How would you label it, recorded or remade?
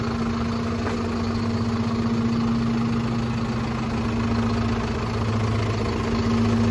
recorded